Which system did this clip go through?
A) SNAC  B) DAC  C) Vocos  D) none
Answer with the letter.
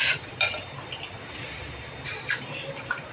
D